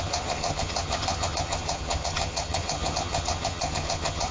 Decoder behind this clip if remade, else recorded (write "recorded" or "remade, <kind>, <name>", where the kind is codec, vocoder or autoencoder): remade, vocoder, HiFi-GAN